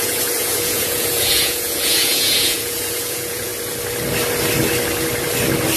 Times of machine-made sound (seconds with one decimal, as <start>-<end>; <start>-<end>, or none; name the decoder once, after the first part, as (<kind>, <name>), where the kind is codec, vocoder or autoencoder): 0.0-3.5 (vocoder, Vocos)

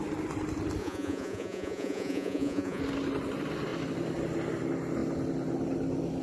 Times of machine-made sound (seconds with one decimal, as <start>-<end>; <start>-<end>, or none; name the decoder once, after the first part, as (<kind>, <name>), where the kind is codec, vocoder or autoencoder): 0.8-2.8 (vocoder, Vocos)